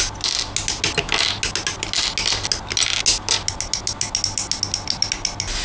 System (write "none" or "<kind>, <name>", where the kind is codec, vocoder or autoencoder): none